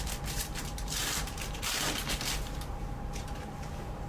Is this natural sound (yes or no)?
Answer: no